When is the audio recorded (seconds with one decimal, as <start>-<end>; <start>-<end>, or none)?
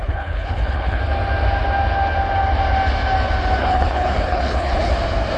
1.0-3.6; 4.9-5.4